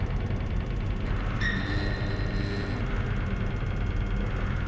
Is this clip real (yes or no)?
yes